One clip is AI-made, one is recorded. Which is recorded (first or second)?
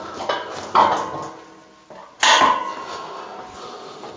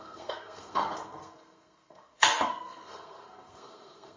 first